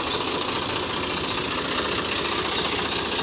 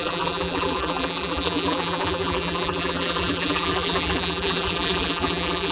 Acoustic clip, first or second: first